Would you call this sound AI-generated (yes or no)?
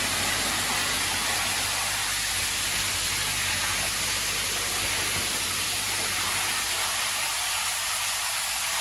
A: no